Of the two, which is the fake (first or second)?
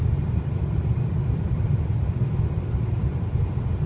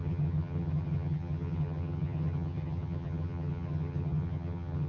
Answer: second